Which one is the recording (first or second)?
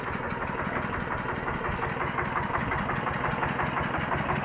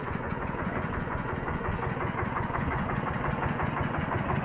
first